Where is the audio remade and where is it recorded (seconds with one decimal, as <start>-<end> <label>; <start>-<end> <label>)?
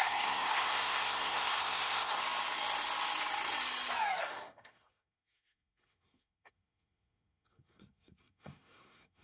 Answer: 0.0-2.2 remade; 2.2-4.2 recorded; 4.2-9.2 remade